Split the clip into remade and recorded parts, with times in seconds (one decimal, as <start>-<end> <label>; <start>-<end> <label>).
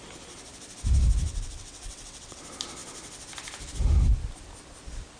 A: 0.0-1.3 recorded; 1.3-2.4 remade; 2.4-5.2 recorded